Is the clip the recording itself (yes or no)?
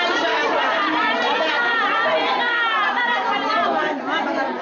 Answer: no